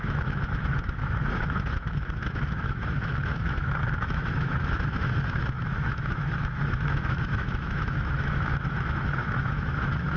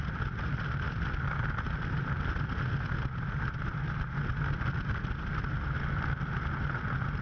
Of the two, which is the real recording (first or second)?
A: second